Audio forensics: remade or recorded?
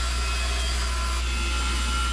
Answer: recorded